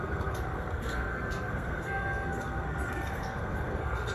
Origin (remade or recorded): remade